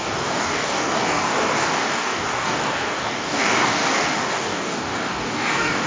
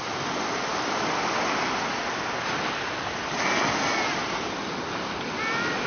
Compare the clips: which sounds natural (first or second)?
second